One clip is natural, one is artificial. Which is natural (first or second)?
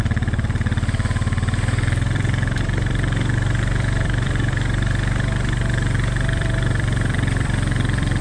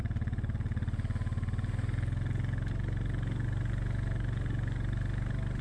second